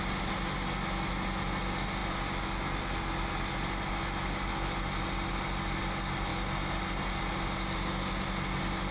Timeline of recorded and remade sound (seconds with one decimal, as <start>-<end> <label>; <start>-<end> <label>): 0.0-8.9 recorded